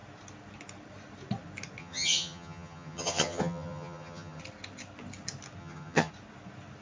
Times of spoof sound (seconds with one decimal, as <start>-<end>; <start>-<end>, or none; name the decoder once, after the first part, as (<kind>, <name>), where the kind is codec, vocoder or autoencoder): 1.8-4.4 (vocoder, HiFi-GAN); 5.6-6.1

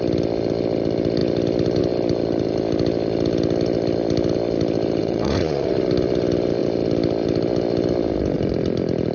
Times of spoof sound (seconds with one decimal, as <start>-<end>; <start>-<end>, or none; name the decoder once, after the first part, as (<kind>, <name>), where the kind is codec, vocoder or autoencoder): 5.0-5.7 (vocoder, Vocos)

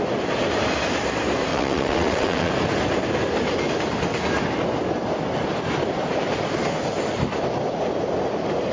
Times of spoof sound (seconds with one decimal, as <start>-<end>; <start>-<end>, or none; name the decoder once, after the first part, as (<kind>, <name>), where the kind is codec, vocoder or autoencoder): 1.5-2.5 (vocoder, WaveNeXt)

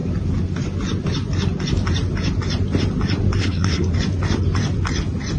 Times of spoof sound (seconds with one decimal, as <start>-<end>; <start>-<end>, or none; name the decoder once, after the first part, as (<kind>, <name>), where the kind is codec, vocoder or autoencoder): 3.4-3.9 (codec, SNAC)

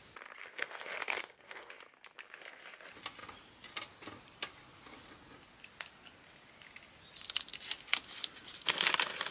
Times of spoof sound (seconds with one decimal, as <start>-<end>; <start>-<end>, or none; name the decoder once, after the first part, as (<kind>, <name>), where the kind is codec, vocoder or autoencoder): 0.4-1.7 (codec, SNAC)

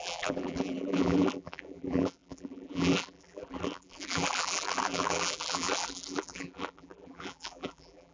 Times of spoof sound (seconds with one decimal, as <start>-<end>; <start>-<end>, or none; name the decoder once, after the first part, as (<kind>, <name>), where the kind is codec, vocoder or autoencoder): 0.0-8.1 (vocoder, BigVGAN v2)

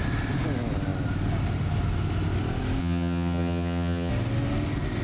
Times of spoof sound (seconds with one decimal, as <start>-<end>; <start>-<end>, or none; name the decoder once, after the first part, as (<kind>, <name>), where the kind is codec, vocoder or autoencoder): 2.8-4.1 (vocoder, HiFi-GAN)

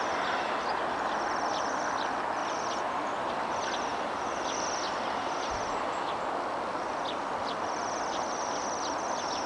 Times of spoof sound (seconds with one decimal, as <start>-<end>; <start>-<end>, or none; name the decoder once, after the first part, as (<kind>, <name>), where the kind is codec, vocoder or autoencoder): none